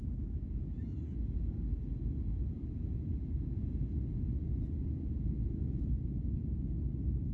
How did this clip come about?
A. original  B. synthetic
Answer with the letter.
A